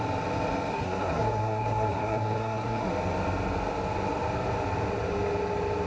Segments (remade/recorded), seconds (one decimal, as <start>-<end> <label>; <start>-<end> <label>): 0.0-0.7 recorded; 0.7-2.9 remade; 2.9-5.9 recorded